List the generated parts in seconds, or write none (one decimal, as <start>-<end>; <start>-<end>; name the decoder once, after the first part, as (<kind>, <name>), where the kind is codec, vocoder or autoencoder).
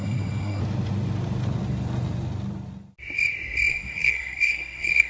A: 0.0-0.6 (codec, SNAC); 3.7-5.1